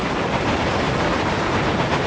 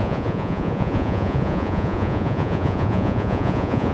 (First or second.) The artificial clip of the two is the second